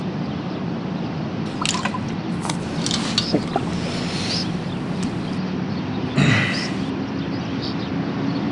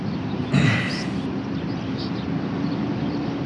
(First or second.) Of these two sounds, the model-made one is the second